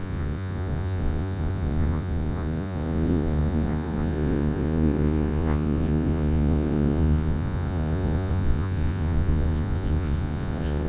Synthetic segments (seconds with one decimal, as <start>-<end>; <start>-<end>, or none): 0.0-10.9